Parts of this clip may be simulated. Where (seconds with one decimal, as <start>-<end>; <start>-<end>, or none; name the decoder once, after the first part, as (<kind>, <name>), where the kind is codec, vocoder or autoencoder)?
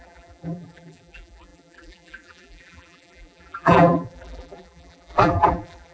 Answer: 0.0-5.9 (vocoder, BigVGAN v2)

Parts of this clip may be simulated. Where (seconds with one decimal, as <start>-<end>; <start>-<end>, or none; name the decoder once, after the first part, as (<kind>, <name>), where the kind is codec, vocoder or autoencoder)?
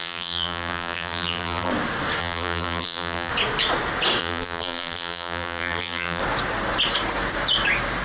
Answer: 0.0-1.7 (vocoder, BigVGAN v2); 2.2-3.3; 4.2-6.2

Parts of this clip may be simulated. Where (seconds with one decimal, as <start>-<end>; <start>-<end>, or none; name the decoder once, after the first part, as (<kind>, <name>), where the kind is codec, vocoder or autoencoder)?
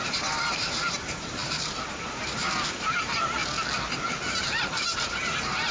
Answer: 0.0-3.4 (vocoder, BigVGAN v2); 4.3-5.7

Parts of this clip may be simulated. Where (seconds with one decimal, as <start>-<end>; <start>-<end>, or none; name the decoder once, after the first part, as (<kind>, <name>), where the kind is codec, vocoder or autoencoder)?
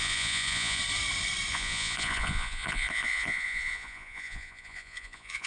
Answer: 0.0-0.8 (vocoder, Vocos); 1.5-5.5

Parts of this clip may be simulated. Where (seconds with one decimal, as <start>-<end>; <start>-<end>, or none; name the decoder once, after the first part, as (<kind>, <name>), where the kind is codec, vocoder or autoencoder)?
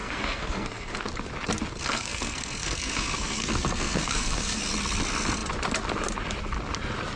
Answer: 0.0-1.1 (codec, SNAC); 1.8-4.6